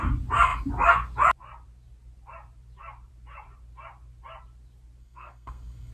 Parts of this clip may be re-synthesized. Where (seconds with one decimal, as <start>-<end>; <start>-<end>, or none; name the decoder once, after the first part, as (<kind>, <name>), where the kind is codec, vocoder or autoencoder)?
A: 5.0-5.9 (codec, SNAC)